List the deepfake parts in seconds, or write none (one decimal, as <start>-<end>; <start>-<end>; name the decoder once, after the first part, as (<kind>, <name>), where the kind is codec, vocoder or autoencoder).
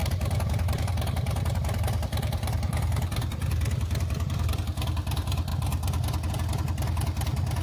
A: 0.0-4.6 (vocoder, BigVGAN v2)